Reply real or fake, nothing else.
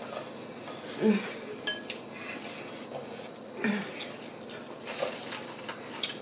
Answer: real